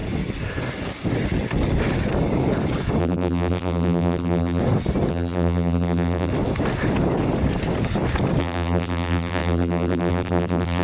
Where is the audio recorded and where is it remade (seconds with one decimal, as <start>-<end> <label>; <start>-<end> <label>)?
0.0-3.0 recorded; 3.0-4.6 remade; 4.6-5.1 recorded; 5.1-6.3 remade; 6.3-8.4 recorded; 8.4-10.8 remade